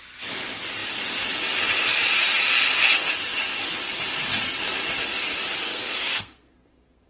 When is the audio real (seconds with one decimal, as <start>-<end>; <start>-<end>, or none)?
0.0-5.7